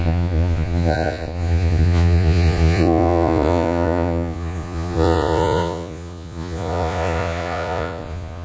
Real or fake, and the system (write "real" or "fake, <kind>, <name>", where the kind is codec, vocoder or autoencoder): fake, vocoder, Vocos